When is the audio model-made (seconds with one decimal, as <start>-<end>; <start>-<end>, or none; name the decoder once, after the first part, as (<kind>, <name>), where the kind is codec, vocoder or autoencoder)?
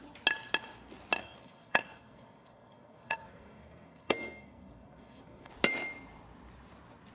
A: 1.2-5.5 (codec, SNAC)